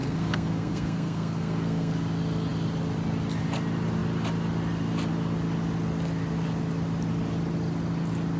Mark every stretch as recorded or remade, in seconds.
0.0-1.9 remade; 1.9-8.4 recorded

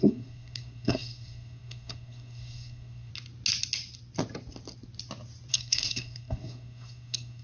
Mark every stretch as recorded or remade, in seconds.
0.0-3.1 remade; 3.1-5.5 recorded; 5.5-7.4 remade

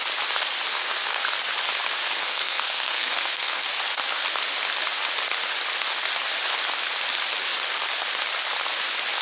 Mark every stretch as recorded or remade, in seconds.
0.0-0.7 recorded; 0.7-1.2 remade; 1.2-2.2 recorded; 2.2-3.6 remade; 3.6-9.2 recorded

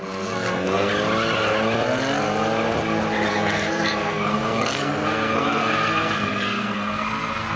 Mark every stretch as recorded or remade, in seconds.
0.0-0.9 remade; 0.9-3.3 recorded; 3.3-7.6 remade